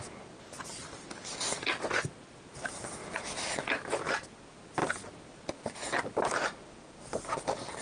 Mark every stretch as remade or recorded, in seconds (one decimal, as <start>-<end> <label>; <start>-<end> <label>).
0.0-0.7 recorded; 0.7-1.6 remade; 1.6-3.0 recorded; 3.0-3.7 remade; 3.7-7.8 recorded